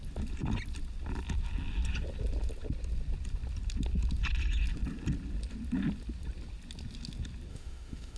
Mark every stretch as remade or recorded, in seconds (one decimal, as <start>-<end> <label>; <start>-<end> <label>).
0.0-7.5 recorded; 7.5-8.2 remade